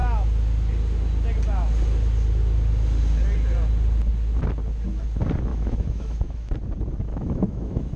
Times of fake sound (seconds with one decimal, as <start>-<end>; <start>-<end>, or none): 5.5-6.5; 7.1-8.0

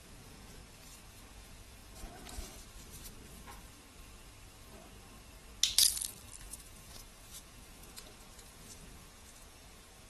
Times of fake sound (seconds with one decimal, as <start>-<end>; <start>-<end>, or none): 0.0-0.6; 1.3-1.8; 6.4-10.1

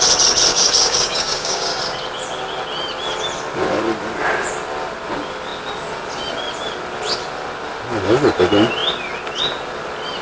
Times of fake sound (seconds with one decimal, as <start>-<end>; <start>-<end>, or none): 0.5-1.8

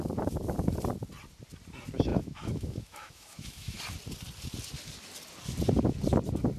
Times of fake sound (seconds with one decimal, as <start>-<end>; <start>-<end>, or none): 2.1-3.8

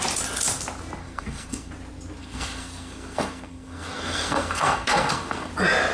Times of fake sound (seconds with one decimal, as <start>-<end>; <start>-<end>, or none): 1.0-1.7; 2.2-5.5

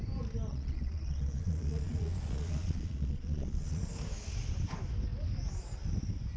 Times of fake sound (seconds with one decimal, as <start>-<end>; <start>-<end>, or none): 0.5-3.8

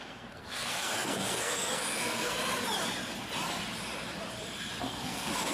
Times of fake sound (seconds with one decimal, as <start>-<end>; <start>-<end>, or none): 0.0-2.4; 4.8-5.5